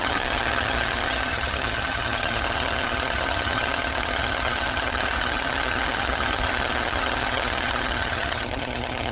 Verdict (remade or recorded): remade